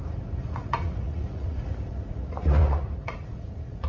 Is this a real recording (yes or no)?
no